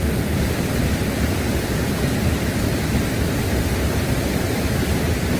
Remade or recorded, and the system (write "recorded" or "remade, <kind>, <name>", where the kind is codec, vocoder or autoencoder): recorded